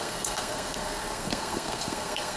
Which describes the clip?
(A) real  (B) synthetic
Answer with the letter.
B